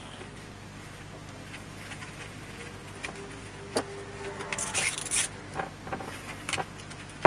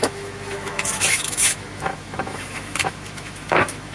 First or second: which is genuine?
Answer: first